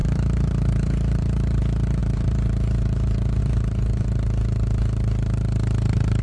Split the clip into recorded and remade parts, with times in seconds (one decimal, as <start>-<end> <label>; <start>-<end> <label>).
0.0-1.6 remade; 1.6-2.0 recorded; 2.0-3.4 remade; 3.4-6.2 recorded